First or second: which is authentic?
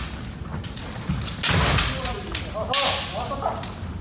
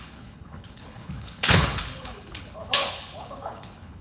first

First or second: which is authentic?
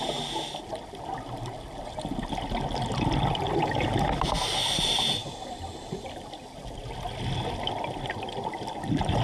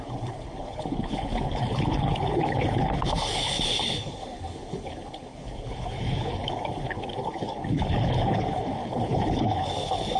first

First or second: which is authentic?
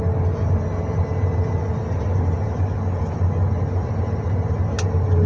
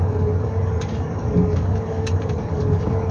first